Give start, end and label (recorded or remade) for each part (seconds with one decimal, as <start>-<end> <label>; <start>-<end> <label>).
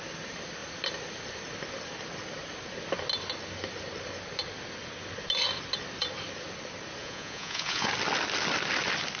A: 0.0-7.0 recorded; 7.0-7.9 remade; 7.9-9.2 recorded